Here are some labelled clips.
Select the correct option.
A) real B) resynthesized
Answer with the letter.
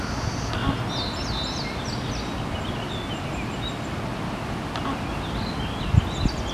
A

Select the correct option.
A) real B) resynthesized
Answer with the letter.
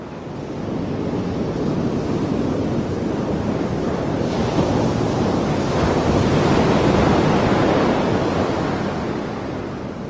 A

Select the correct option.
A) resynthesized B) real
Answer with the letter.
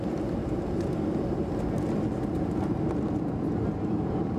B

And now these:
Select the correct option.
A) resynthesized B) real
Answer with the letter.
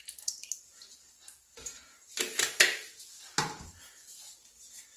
B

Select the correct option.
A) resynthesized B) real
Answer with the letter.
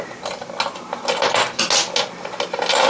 B